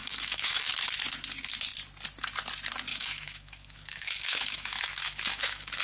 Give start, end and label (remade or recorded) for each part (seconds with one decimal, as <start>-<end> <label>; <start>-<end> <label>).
0.0-0.7 remade; 0.7-2.9 recorded; 2.9-5.8 remade